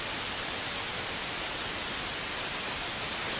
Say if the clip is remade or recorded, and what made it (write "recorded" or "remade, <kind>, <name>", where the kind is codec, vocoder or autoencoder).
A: recorded